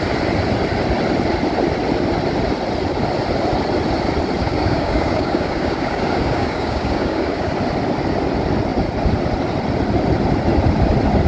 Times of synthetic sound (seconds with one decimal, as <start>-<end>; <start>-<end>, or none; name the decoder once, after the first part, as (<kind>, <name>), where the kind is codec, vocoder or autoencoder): 4.4-7.5 (codec, DAC)